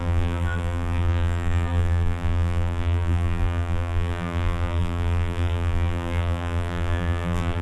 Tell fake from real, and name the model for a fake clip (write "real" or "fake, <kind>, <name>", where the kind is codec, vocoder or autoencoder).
fake, vocoder, BigVGAN v2